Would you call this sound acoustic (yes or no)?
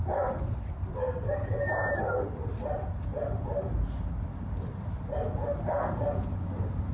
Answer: yes